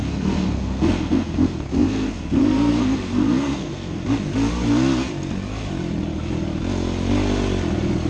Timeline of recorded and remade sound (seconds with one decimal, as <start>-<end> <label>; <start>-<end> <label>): 0.0-4.0 remade; 4.0-8.1 recorded